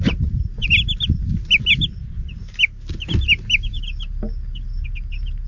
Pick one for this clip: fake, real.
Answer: real